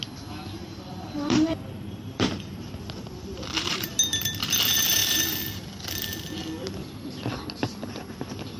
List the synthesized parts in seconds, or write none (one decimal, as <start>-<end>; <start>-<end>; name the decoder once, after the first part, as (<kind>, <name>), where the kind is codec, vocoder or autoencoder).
0.6-3.9 (vocoder, BigVGAN v2)